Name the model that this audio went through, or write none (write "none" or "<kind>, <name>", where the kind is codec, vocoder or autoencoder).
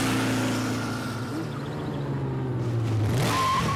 none